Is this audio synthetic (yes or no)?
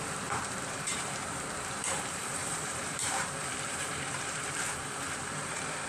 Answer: yes